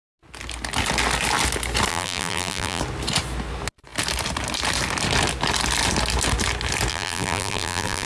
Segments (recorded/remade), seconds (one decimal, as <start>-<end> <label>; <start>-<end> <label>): 0.0-1.9 recorded; 1.9-2.8 remade; 2.8-6.9 recorded; 6.9-8.1 remade